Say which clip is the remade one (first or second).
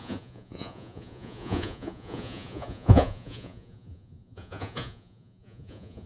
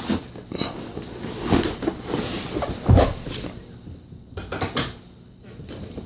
first